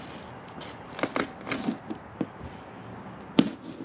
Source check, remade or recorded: recorded